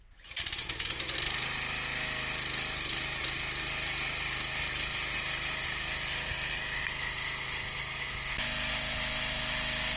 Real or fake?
real